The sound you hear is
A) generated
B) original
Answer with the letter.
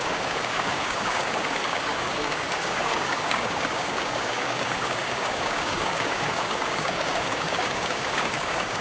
A